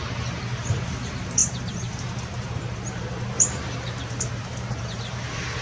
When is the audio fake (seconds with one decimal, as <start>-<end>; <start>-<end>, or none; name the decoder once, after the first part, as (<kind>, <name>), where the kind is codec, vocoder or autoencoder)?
0.6-5.6 (vocoder, BigVGAN v2)